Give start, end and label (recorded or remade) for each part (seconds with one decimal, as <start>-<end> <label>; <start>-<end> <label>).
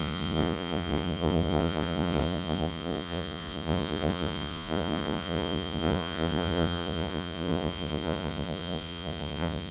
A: 0.0-9.7 remade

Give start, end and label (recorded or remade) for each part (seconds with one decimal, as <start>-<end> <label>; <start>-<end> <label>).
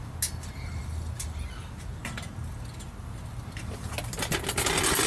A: 0.0-5.1 recorded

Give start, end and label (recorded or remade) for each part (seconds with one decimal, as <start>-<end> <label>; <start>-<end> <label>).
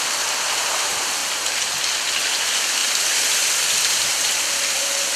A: 0.0-5.2 recorded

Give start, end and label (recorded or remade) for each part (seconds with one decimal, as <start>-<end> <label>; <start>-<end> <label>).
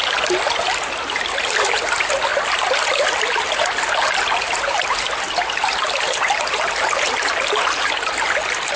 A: 0.0-8.8 recorded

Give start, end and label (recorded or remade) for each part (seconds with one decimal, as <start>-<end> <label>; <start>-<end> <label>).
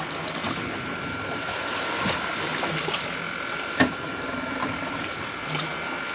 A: 0.0-0.4 recorded; 0.4-1.9 remade; 1.9-2.5 recorded; 2.5-6.1 remade